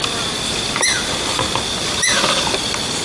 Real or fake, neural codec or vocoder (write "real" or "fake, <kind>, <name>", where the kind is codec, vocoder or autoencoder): real